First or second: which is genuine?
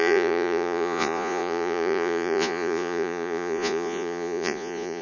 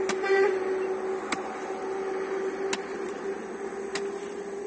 second